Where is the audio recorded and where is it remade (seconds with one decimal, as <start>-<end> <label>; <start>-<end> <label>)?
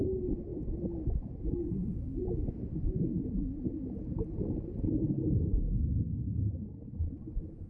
0.0-7.7 recorded